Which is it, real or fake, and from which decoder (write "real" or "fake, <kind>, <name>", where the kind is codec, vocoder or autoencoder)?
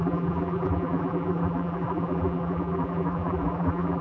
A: fake, vocoder, BigVGAN v2